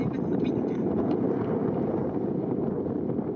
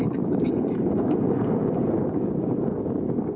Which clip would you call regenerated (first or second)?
second